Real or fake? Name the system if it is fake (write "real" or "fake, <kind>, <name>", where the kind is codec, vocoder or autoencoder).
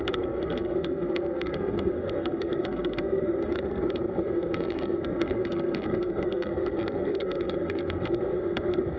fake, codec, SNAC